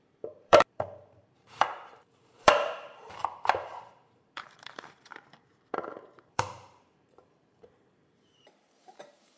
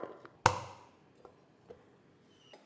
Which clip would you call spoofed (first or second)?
first